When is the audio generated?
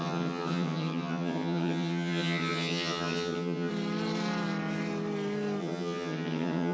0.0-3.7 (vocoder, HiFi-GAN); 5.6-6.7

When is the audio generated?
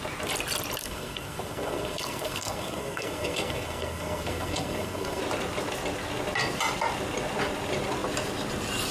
0.8-5.2 (codec, SNAC)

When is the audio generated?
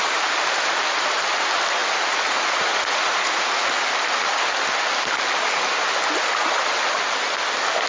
1.8-3.7 (vocoder, Vocos)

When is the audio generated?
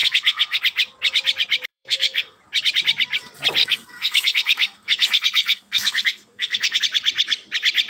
0.0-0.6 (codec, SNAC); 1.7-2.4; 3.6-6.8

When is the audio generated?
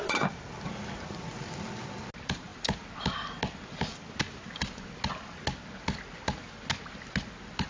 none